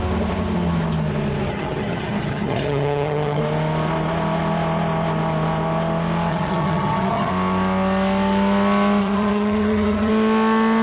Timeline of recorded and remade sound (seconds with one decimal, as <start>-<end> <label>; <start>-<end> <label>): 0.0-1.5 recorded; 1.5-3.4 remade; 3.4-6.3 recorded; 6.3-7.3 remade; 7.3-9.0 recorded; 9.0-10.1 remade; 10.1-10.8 recorded